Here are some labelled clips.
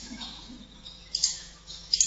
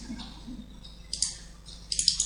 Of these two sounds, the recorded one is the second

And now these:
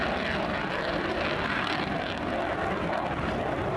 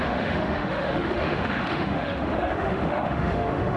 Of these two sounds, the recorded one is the first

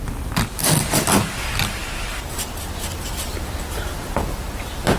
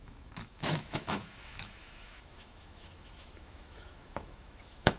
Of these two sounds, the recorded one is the first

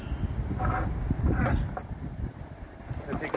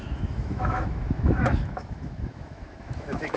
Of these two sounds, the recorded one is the first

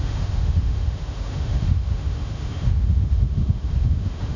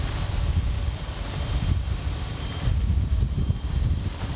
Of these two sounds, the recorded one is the second